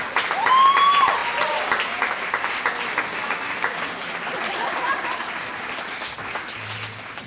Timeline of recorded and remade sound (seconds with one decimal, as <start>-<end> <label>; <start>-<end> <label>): 0.0-7.3 recorded